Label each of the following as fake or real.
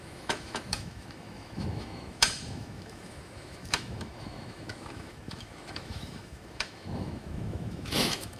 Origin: fake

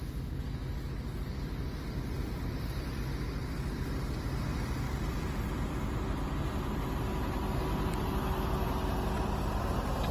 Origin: real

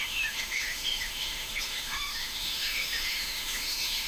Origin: fake